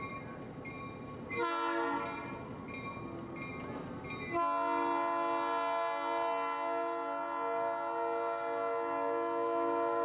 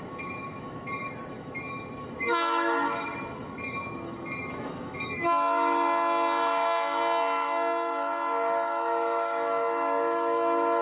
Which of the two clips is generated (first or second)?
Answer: second